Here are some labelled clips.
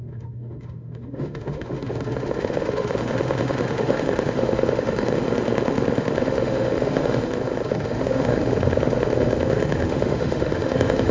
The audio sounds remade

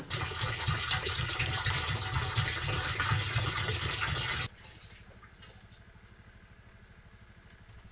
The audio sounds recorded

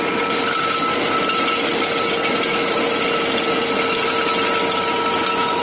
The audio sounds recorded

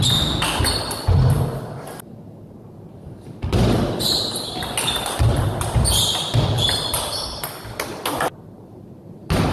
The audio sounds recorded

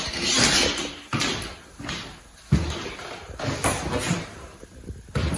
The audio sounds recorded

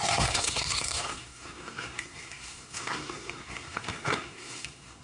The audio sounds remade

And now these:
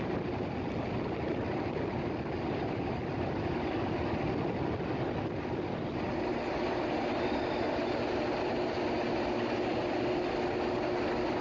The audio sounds recorded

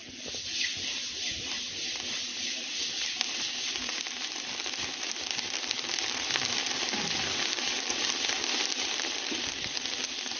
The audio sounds recorded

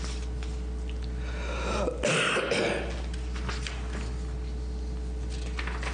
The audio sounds recorded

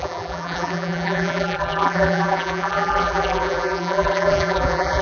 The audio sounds remade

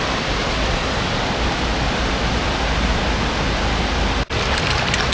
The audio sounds recorded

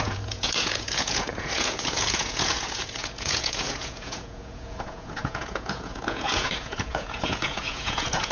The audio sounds remade